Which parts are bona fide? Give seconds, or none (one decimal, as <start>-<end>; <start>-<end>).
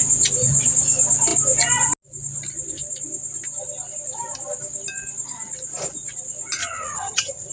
0.0-6.6